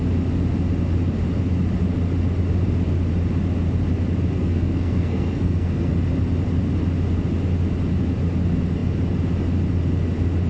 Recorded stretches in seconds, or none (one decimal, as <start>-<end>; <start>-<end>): 0.0-4.4; 5.9-10.5